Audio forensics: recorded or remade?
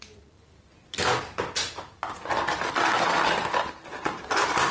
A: recorded